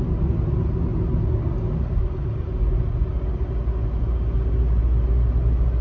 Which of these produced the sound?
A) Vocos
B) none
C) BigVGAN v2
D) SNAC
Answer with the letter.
B